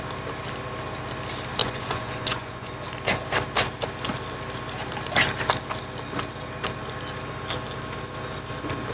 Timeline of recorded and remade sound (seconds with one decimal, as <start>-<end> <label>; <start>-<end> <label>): 0.0-1.6 recorded; 1.6-2.7 remade; 2.7-8.9 recorded